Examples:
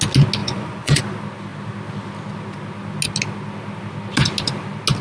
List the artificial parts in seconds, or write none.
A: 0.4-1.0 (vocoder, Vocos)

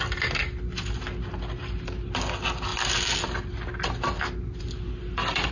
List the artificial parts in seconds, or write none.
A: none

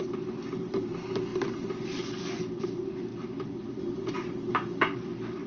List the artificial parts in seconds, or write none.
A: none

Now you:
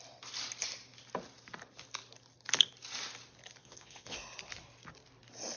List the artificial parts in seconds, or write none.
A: 3.6-4.2 (vocoder, Vocos)